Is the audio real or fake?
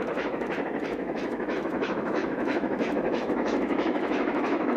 fake